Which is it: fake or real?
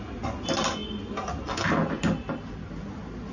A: real